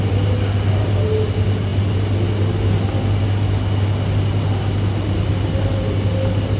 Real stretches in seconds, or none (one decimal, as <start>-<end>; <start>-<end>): 0.0-6.6